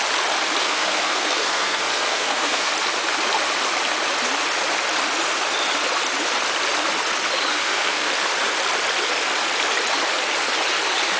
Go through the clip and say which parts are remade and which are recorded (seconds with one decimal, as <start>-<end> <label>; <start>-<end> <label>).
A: 0.0-0.6 recorded; 0.6-2.7 remade; 2.7-7.5 recorded; 7.5-8.1 remade; 8.1-11.2 recorded